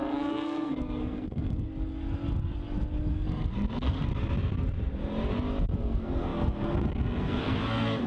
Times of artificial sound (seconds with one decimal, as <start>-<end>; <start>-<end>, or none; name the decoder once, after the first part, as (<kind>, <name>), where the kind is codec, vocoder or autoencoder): 0.0-1.7 (codec, SNAC); 3.1-4.1; 5.8-8.1

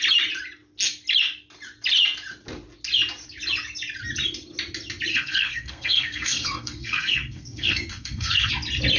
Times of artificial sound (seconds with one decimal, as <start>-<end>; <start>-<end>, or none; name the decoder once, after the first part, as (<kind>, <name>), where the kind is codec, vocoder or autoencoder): 5.1-8.5 (codec, SNAC)

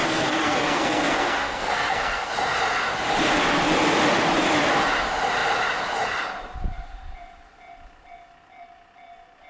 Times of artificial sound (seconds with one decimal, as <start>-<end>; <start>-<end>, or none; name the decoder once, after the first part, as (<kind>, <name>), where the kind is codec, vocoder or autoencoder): 0.0-2.3 (codec, SNAC)